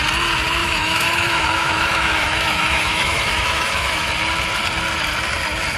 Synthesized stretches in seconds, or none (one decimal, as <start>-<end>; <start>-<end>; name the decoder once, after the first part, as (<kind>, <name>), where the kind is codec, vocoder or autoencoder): 0.6-4.1 (autoencoder, DAC-VAE)